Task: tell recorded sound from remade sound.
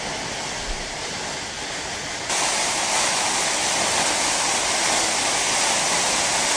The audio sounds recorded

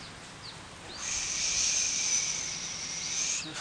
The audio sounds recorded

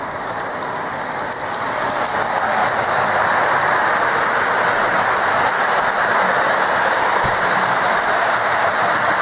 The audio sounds recorded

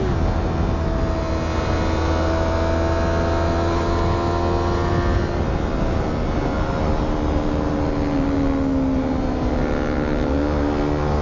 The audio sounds recorded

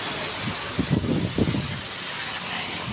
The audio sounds recorded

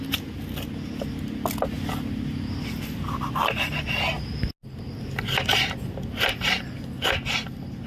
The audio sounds recorded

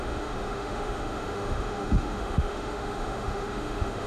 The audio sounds remade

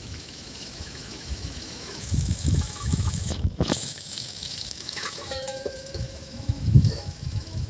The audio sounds remade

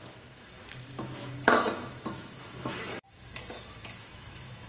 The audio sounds remade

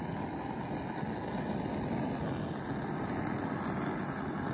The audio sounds recorded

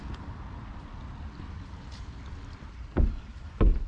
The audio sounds recorded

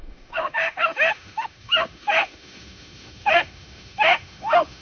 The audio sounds remade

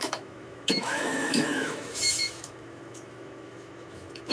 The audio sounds remade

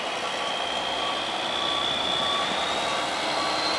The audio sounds recorded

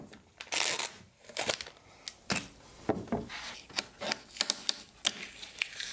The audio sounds recorded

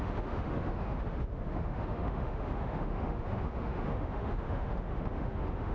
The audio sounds remade